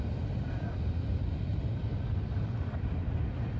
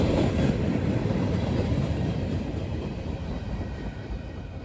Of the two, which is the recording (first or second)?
first